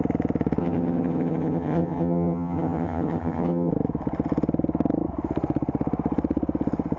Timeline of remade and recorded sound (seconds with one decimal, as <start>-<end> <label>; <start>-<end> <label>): 0.0-0.6 recorded; 0.6-3.7 remade; 3.7-7.0 recorded